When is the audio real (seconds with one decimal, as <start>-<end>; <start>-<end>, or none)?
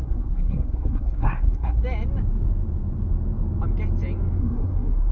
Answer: 1.8-4.4